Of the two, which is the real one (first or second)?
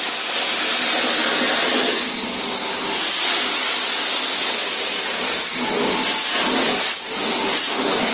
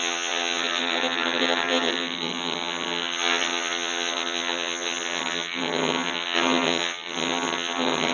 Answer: first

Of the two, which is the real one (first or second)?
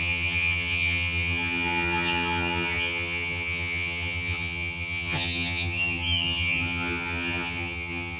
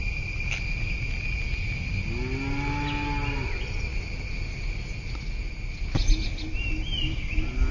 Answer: second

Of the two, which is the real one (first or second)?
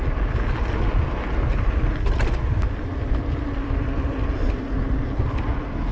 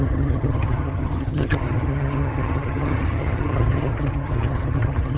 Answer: first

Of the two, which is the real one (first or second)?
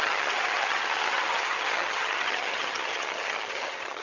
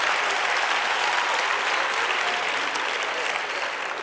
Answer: second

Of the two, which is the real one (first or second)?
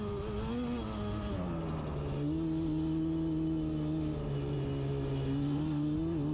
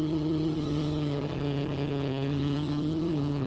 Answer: first